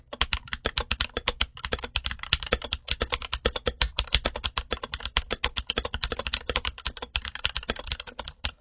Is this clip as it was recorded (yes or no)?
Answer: yes